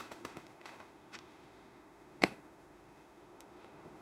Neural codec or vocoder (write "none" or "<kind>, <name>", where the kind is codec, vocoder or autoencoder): autoencoder, DAC-VAE